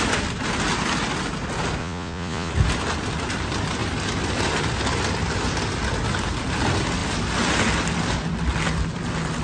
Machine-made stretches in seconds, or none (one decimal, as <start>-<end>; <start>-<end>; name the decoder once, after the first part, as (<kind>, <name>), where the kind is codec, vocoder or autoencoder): 1.8-2.5 (vocoder, Vocos)